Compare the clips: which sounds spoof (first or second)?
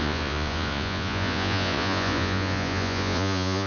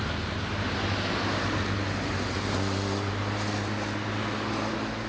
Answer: first